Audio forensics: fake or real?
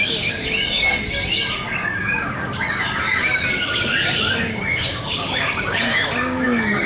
fake